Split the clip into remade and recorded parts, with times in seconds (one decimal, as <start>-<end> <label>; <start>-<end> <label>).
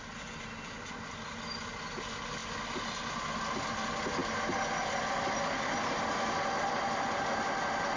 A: 0.0-8.0 recorded